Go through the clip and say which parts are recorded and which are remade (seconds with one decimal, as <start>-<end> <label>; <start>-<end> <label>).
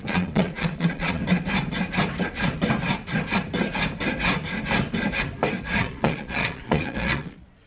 0.0-1.2 remade; 1.2-5.8 recorded; 5.8-7.7 remade